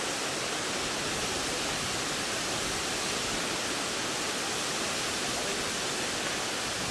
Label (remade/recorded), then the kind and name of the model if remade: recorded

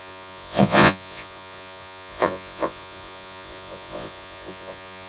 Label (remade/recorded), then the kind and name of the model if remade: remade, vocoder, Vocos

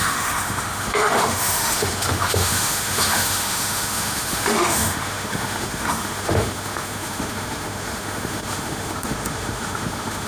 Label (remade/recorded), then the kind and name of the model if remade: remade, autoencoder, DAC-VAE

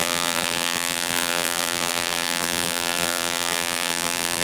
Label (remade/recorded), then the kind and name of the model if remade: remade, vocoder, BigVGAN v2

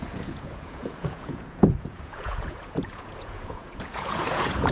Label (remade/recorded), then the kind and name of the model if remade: remade, vocoder, Vocos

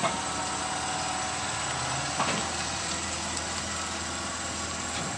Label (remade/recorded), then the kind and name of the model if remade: recorded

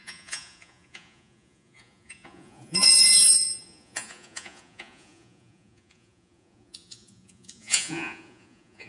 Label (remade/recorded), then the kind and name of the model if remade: remade, vocoder, Vocos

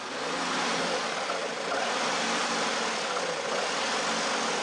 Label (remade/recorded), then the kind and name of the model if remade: recorded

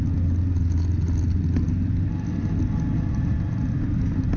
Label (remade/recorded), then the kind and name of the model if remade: recorded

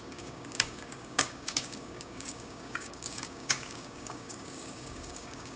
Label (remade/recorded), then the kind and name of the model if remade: remade, codec, DAC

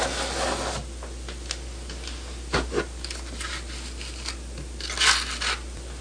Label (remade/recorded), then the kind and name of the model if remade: recorded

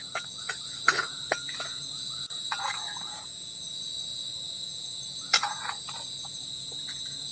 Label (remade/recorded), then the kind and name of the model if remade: remade, vocoder, Vocos